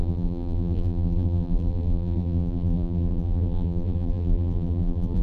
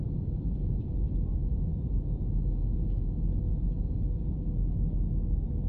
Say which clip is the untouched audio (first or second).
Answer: second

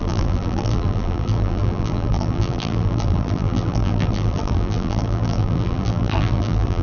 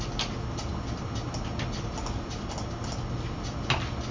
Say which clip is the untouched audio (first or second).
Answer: second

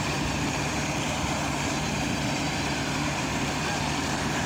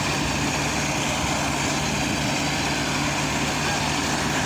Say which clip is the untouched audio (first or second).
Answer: second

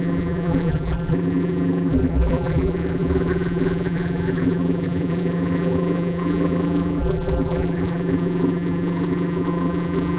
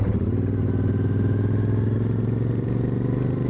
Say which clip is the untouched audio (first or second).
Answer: second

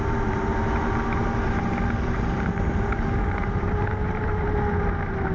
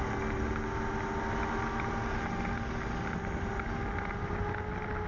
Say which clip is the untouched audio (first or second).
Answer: second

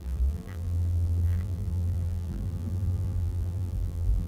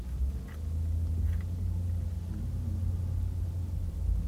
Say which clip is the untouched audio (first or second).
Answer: second